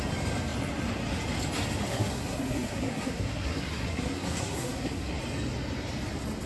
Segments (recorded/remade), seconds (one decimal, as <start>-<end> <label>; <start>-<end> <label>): 0.0-1.9 recorded; 1.9-5.2 remade; 5.2-6.5 recorded